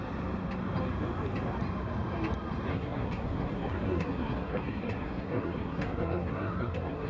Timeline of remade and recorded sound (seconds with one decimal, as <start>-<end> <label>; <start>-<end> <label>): 0.0-2.7 recorded; 2.7-7.1 remade

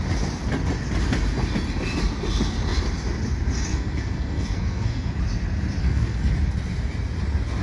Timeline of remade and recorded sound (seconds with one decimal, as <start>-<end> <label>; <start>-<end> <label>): 0.0-3.7 recorded; 3.7-5.2 remade; 5.2-5.8 recorded; 5.8-6.3 remade; 6.3-7.6 recorded

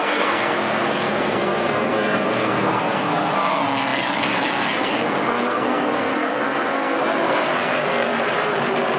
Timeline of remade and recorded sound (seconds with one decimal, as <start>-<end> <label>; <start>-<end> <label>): 0.0-8.1 remade; 8.1-9.0 recorded